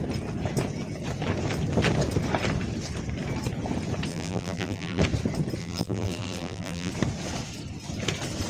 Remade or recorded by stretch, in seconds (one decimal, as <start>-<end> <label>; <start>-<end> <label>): 0.0-4.1 recorded; 4.1-5.0 remade; 5.0-5.6 recorded; 5.6-6.9 remade; 6.9-8.5 recorded